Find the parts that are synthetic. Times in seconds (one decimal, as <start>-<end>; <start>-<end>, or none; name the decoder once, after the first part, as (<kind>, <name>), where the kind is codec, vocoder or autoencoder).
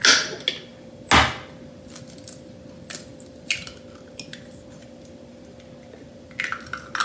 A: none